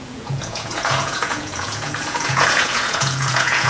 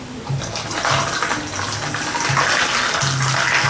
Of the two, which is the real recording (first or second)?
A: second